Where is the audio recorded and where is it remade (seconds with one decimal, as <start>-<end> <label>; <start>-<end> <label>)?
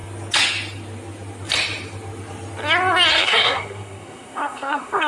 0.0-3.1 recorded; 3.1-5.1 remade